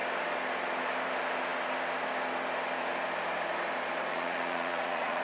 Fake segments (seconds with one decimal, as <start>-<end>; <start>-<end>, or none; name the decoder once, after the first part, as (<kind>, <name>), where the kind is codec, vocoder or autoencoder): 4.1-5.2 (vocoder, Vocos)